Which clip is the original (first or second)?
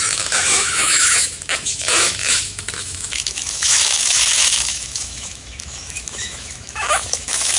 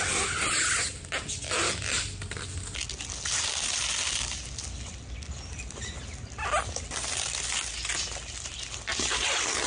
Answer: second